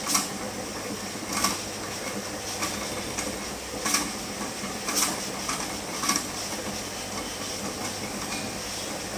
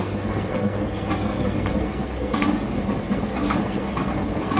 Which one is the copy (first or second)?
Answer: second